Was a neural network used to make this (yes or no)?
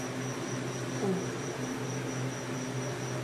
no